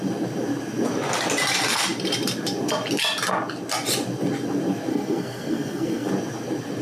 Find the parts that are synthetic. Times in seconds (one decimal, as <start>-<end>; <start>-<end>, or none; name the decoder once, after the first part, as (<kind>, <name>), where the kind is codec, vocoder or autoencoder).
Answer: 4.9-6.1 (codec, SNAC)